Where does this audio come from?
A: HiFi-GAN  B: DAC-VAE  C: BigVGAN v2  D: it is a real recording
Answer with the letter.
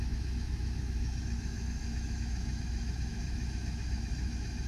B